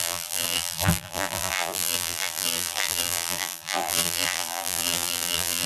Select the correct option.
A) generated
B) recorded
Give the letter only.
A